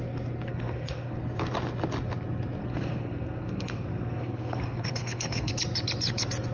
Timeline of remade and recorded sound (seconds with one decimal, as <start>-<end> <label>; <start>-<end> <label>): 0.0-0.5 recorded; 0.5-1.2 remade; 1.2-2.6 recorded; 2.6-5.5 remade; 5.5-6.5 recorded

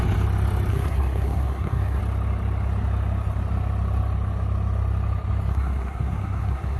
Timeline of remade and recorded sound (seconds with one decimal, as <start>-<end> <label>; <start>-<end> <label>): 0.0-0.7 recorded; 0.7-2.0 remade; 2.0-5.5 recorded; 5.5-6.8 remade

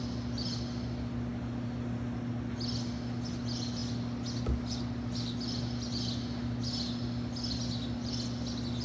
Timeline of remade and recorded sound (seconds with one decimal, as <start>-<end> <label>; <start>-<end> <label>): 0.0-8.8 recorded

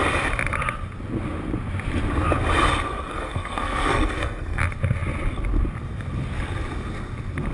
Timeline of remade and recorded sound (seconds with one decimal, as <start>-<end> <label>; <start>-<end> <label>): 0.0-3.1 recorded; 3.1-4.6 remade; 4.6-7.5 recorded

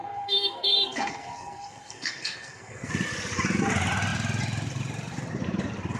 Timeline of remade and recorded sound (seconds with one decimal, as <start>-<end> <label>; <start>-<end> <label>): 0.0-2.9 remade; 2.9-6.0 recorded

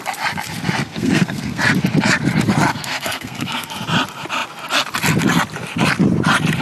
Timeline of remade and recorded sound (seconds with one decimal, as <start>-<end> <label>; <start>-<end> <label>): 0.0-0.8 recorded; 0.8-1.6 remade; 1.6-2.7 recorded; 2.7-3.7 remade; 3.7-6.6 recorded

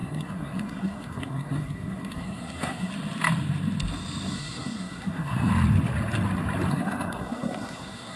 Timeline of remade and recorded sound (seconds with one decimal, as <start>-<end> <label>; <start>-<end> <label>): 0.0-2.9 remade; 2.9-4.3 recorded; 4.3-5.5 remade; 5.5-6.7 recorded; 6.7-8.2 remade